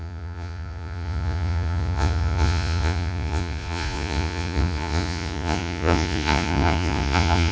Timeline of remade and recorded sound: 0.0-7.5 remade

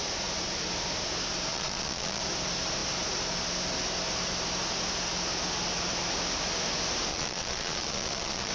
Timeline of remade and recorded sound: 0.0-1.5 recorded; 1.5-2.2 remade; 2.2-7.1 recorded; 7.1-8.5 remade

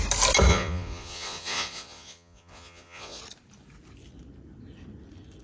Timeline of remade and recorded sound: 0.0-0.5 recorded; 0.5-3.2 remade; 3.2-5.4 recorded

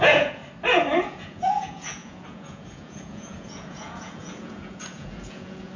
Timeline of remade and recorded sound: 0.0-0.4 remade; 0.4-1.0 recorded; 1.0-5.8 remade

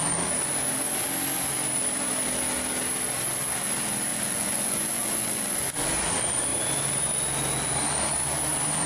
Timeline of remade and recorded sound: 0.0-4.1 recorded; 4.1-5.8 remade; 5.8-8.9 recorded

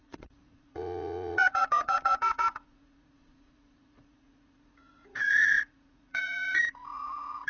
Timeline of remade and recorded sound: 0.0-7.5 remade